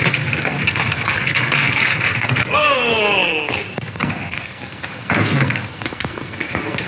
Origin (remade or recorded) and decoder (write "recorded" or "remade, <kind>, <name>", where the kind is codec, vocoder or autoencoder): remade, codec, SNAC